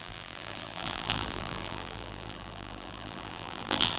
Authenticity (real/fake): fake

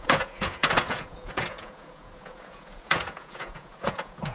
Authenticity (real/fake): fake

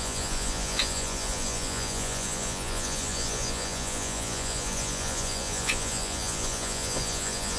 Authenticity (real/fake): fake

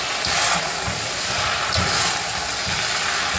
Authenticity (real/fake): real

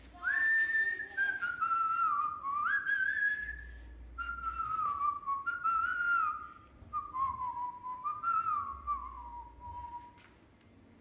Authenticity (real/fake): real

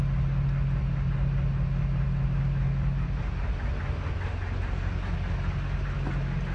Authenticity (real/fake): real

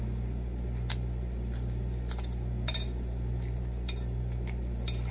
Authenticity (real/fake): real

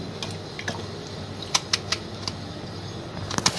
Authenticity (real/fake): real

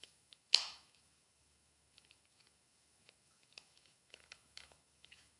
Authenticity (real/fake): fake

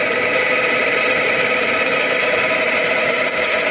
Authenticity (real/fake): fake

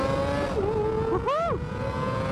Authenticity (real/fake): real